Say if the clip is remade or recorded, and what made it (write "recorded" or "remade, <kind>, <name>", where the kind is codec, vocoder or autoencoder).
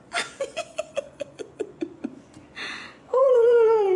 remade, vocoder, Vocos